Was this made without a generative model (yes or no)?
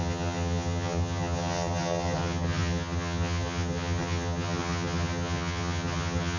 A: no